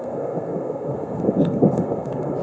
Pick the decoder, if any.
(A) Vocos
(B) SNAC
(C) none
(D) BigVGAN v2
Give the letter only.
B